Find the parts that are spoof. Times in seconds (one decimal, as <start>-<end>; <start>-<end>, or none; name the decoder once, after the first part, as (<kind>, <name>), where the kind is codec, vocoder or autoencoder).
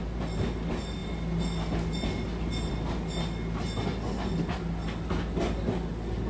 none